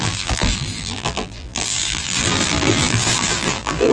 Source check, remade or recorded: remade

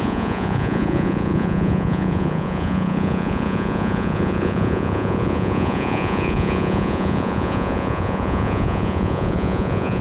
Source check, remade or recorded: remade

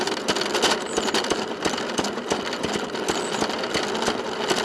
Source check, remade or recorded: recorded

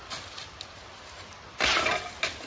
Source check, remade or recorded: recorded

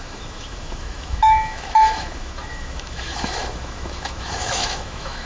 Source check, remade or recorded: remade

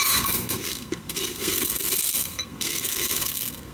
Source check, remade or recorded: remade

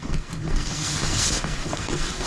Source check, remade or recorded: remade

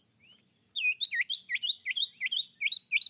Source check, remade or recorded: recorded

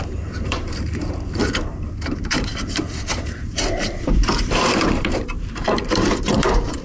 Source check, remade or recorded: remade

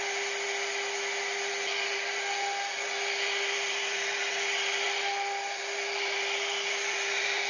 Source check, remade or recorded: recorded